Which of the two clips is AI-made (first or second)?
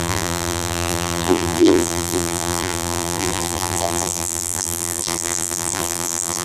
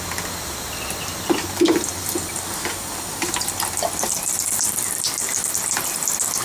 first